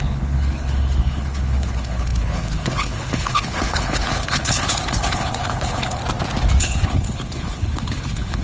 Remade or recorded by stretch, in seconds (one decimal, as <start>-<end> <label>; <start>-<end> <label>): 0.0-6.0 remade; 6.0-6.6 recorded; 6.6-8.4 remade